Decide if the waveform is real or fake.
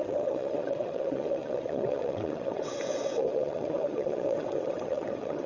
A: fake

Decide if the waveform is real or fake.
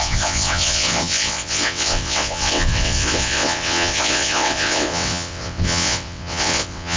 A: fake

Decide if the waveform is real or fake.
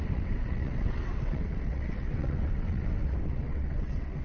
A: fake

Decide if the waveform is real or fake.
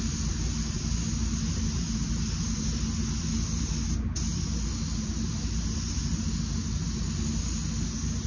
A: real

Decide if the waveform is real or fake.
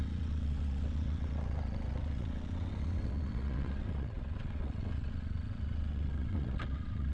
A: fake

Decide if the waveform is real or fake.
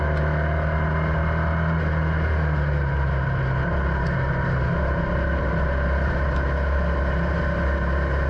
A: real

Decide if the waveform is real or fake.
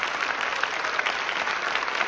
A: real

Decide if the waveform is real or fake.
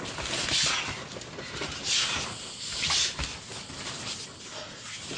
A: real